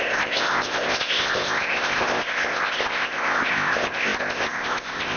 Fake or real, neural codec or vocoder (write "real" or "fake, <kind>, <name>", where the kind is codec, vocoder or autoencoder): fake, codec, ZipCodec